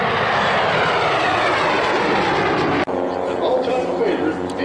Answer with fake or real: real